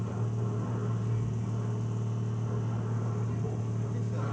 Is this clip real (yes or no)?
yes